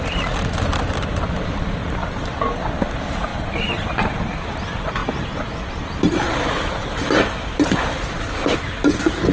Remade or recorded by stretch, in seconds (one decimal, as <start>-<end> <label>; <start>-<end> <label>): 0.0-9.3 recorded